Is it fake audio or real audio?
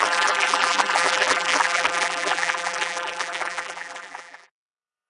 fake